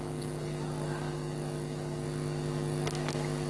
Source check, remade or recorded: recorded